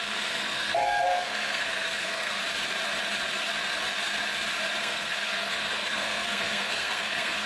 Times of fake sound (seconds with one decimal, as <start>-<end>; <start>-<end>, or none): 0.0-2.4; 4.8-7.5